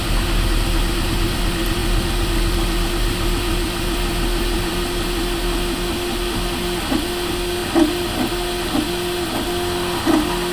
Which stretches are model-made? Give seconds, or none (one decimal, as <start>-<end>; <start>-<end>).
none